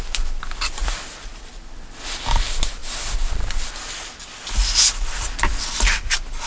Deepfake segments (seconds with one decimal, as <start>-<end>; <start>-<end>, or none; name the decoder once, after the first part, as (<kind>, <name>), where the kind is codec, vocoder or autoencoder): none